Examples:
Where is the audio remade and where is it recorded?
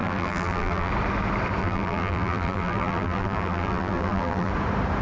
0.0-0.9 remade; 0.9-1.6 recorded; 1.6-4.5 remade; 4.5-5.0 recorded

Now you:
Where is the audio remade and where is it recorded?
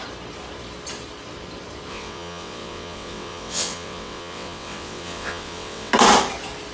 0.0-1.9 recorded; 1.9-5.9 remade; 5.9-6.7 recorded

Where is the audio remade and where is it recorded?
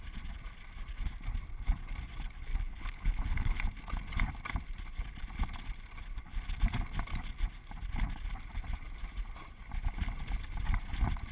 0.0-2.5 recorded; 2.5-3.6 remade; 3.6-11.3 recorded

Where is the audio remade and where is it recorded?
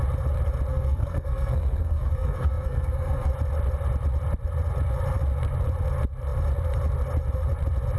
0.0-0.7 recorded; 0.7-3.3 remade; 3.3-8.0 recorded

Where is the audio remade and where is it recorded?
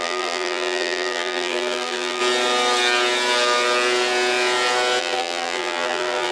0.0-2.2 remade; 2.2-5.0 recorded; 5.0-6.3 remade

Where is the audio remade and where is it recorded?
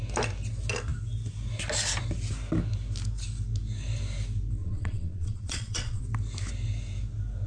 0.0-4.6 recorded; 4.6-6.0 remade; 6.0-7.5 recorded